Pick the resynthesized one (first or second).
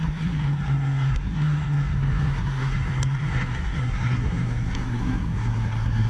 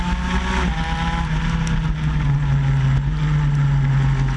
first